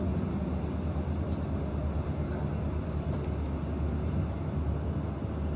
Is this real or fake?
real